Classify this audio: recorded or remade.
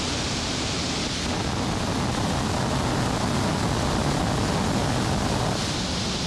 recorded